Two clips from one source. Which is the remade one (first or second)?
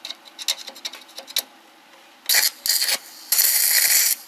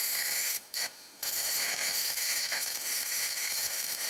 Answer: second